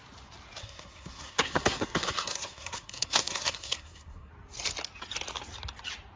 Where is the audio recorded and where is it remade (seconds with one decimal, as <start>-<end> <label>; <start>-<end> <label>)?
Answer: 0.0-0.6 recorded; 0.6-4.3 remade; 4.3-6.2 recorded